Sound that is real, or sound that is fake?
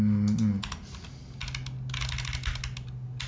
real